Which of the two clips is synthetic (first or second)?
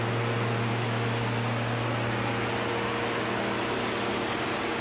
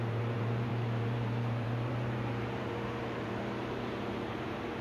second